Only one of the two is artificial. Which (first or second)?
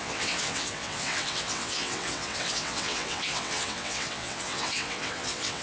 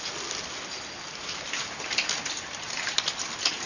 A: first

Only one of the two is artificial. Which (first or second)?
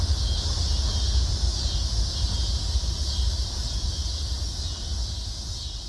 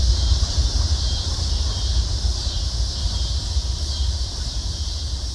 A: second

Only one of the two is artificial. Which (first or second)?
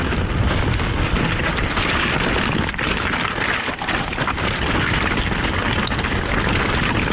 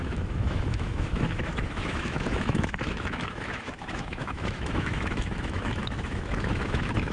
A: second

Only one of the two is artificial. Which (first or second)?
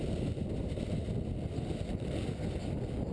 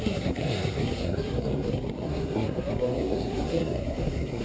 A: second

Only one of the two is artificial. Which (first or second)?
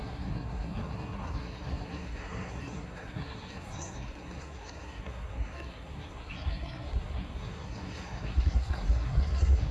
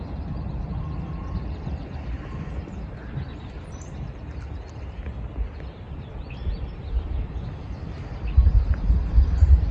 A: first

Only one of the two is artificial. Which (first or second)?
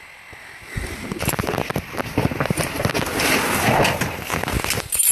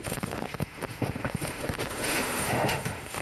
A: second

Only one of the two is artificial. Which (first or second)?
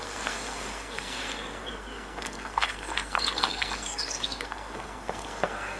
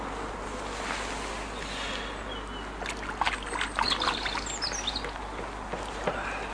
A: first